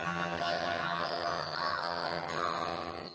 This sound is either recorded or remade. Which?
remade